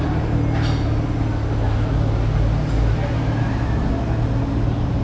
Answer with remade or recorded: recorded